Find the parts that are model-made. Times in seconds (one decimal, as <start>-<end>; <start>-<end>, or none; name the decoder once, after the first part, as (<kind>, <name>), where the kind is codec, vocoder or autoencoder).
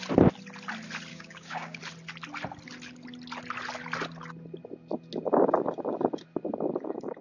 1.1-1.8 (codec, DAC)